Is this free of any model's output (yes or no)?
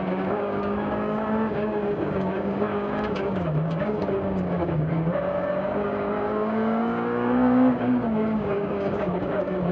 no